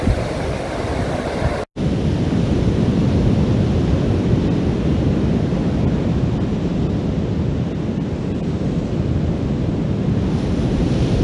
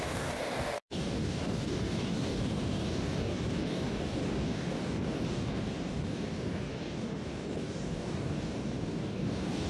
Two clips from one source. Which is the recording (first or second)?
first